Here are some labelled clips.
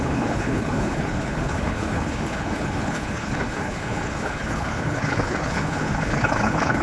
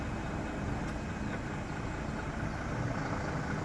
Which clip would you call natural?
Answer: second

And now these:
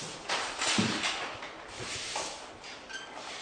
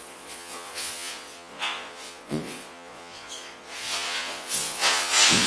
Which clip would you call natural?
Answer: first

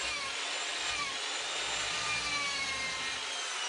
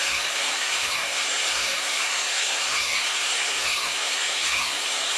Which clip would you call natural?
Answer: first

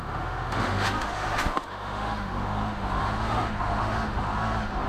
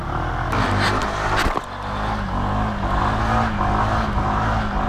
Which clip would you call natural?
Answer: second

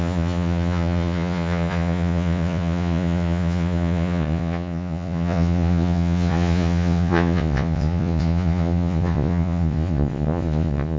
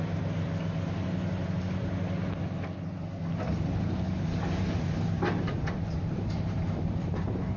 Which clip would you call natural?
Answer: second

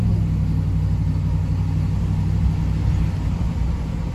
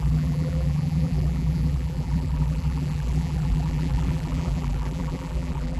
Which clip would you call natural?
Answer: first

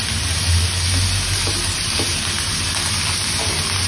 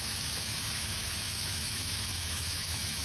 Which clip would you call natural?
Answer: first